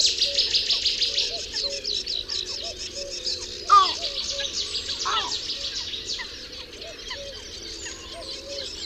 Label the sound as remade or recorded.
recorded